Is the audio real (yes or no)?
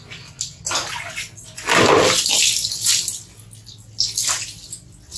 yes